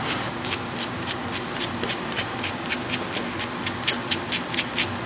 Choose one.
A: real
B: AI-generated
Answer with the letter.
A